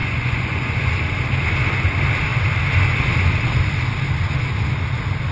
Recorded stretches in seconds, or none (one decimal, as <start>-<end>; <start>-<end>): 0.9-5.3